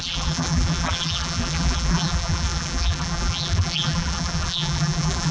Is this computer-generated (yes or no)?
yes